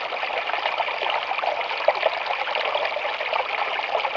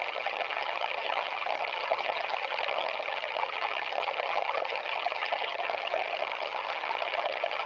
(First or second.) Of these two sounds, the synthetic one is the second